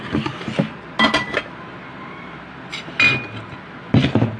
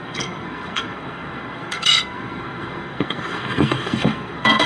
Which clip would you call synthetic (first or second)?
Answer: second